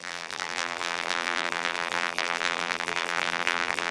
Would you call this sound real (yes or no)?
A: no